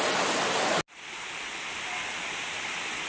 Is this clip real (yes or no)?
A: yes